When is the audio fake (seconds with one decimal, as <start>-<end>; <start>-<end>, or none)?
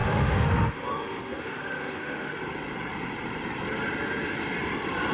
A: 0.0-2.4